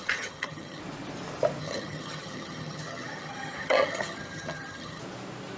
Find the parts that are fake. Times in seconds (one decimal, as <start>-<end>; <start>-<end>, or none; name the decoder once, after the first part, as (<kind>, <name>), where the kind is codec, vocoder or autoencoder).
0.0-0.8 (vocoder, HiFi-GAN); 1.6-5.0